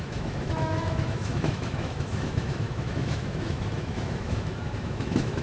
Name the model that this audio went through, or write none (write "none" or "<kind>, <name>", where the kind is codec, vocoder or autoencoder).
autoencoder, DAC-VAE